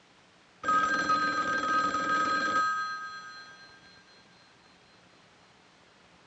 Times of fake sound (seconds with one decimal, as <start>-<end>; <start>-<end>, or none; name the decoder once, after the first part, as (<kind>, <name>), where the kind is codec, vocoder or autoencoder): none